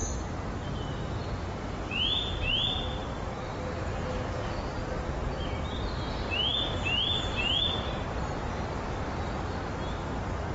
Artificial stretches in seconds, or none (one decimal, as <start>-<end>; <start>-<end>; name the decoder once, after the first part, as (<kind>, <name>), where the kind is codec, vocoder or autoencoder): none